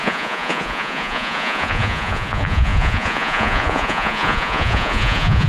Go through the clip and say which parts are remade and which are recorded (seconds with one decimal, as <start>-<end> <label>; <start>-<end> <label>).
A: 0.0-5.5 remade